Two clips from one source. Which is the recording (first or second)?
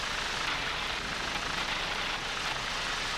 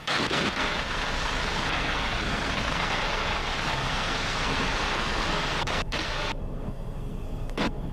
first